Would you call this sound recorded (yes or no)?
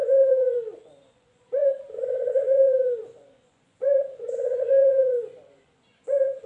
no